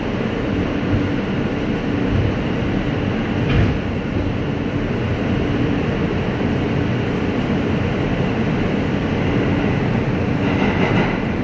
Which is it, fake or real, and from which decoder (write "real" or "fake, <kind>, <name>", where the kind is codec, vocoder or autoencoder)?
real